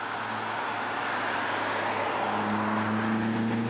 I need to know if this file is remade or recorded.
recorded